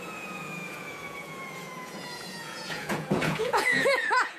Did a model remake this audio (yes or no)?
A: yes